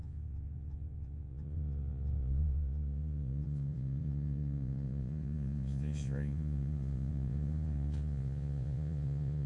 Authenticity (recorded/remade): remade